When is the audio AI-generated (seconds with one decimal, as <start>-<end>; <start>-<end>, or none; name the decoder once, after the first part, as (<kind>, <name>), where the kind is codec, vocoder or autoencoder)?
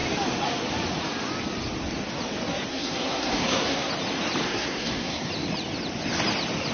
2.7-3.9 (codec, SNAC); 4.4-5.3